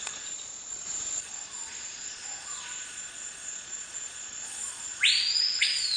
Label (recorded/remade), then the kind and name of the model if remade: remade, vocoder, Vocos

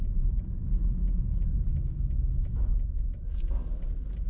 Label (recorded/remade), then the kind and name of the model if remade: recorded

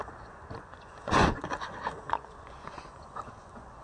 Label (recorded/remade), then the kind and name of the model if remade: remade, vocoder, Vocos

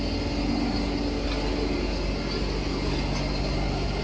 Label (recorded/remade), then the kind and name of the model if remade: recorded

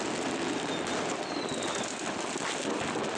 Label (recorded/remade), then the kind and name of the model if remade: recorded